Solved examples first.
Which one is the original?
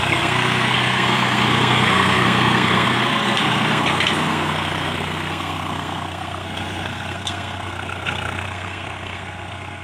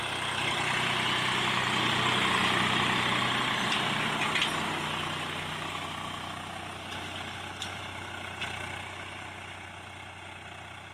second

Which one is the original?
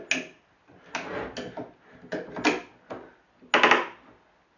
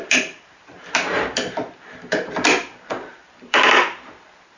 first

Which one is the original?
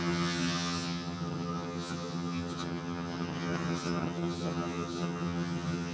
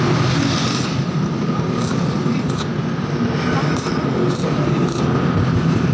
second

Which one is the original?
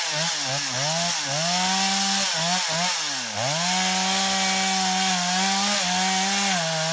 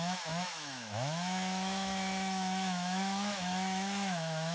first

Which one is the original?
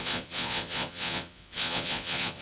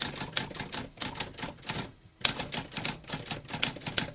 second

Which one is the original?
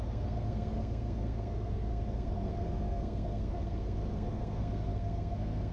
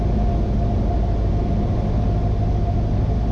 second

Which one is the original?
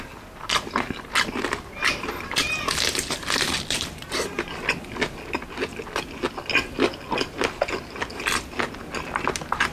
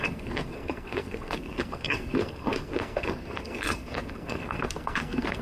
first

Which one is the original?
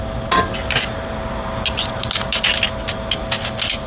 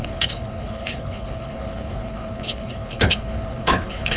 first